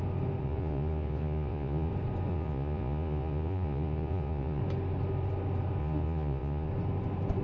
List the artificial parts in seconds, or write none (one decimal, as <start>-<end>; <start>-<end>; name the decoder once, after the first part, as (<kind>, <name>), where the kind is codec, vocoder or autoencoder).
0.4-1.9 (vocoder, Vocos); 2.3-4.6; 5.8-6.7